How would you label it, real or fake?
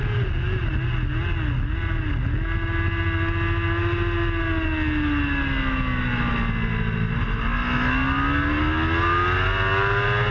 real